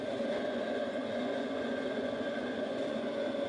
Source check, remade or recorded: remade